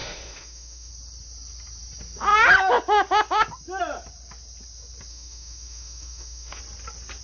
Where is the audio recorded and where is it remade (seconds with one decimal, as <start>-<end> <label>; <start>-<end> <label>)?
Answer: 0.0-0.9 remade; 0.9-5.1 recorded; 5.1-6.6 remade; 6.6-7.2 recorded

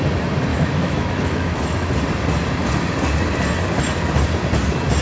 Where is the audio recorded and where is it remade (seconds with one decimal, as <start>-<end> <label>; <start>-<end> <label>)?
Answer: 0.0-0.5 recorded; 0.5-1.9 remade; 1.9-5.0 recorded

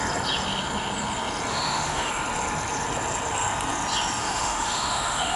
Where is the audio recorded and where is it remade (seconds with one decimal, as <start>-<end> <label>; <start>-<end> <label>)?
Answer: 0.0-1.5 recorded; 1.5-2.1 remade; 2.1-4.2 recorded; 4.2-5.4 remade

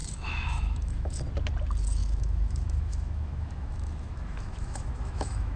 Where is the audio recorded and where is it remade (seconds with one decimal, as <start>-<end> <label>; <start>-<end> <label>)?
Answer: 0.0-1.2 remade; 1.2-2.0 recorded; 2.0-5.6 remade

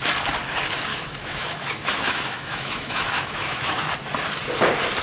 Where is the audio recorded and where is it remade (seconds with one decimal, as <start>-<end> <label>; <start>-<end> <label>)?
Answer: 0.0-0.9 recorded; 0.9-3.9 remade; 3.9-5.0 recorded